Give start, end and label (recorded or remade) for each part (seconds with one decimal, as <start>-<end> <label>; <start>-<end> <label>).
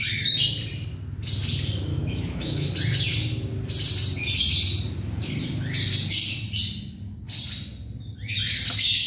0.0-1.9 recorded; 1.9-2.7 remade; 2.7-9.1 recorded